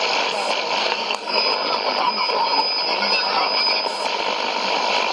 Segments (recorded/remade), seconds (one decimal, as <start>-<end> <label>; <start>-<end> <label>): 0.0-0.8 recorded; 0.8-1.4 remade; 1.4-5.1 recorded